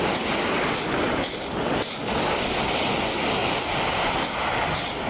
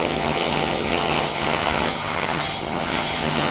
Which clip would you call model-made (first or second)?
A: second